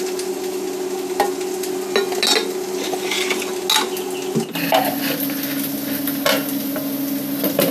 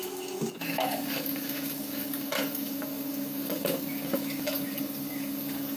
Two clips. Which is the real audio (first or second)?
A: first